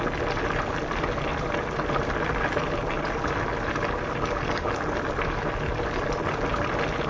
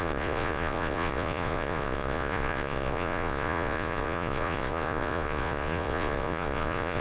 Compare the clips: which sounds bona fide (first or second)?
first